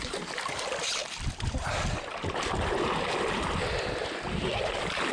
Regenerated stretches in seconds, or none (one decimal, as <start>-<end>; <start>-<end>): 1.0-4.1

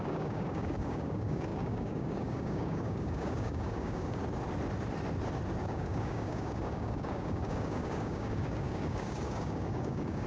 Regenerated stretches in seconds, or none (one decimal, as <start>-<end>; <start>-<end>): 0.0-4.2; 5.6-10.3